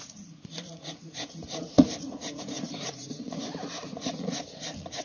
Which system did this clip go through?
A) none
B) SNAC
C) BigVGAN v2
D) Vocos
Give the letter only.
D